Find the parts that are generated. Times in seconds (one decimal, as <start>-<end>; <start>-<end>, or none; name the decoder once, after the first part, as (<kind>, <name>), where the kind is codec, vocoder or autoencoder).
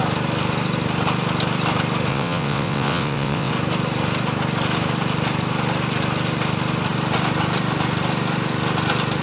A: 2.1-3.5 (vocoder, WaveNeXt)